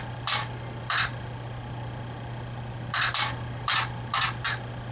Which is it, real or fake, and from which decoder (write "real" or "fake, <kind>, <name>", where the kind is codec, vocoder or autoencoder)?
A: real